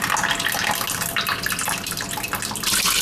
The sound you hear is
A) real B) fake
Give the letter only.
A